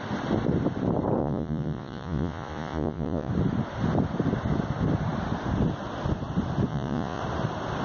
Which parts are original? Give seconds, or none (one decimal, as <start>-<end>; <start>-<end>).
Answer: 0.0-1.2; 3.3-6.7; 7.2-7.8